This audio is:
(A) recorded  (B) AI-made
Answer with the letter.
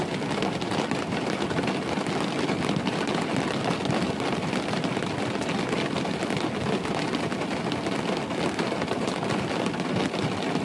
A